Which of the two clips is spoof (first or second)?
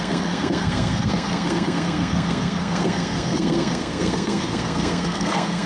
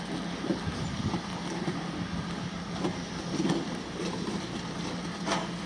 first